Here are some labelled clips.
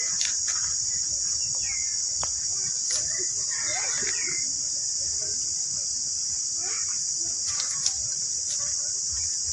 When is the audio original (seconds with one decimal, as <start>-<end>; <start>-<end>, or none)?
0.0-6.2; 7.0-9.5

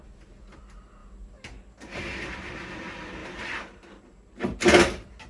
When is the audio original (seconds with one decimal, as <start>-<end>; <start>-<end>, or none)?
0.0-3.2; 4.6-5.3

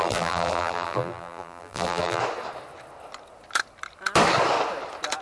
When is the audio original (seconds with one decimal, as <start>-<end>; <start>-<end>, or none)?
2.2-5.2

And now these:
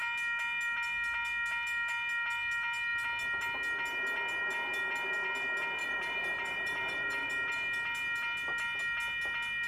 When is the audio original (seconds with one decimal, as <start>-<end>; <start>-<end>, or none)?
0.0-5.8; 7.3-9.7

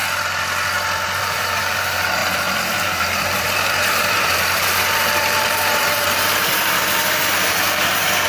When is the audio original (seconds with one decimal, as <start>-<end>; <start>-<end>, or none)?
0.0-1.2